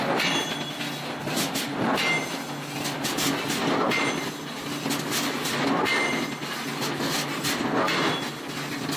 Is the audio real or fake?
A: real